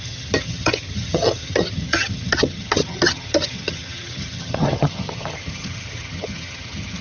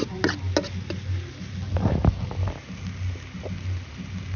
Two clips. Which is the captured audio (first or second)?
second